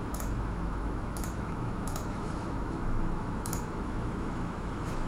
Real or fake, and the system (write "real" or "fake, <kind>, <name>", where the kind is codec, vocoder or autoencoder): fake, autoencoder, DAC-VAE